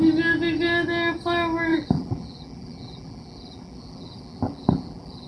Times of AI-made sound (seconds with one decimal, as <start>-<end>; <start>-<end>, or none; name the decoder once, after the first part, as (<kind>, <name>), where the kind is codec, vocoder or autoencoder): 1.7-5.3 (vocoder, BigVGAN v2)